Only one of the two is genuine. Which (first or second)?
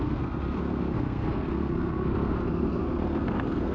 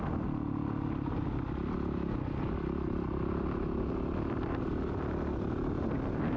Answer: second